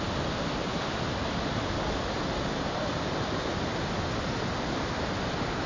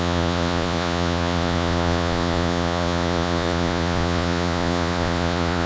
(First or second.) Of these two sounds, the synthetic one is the second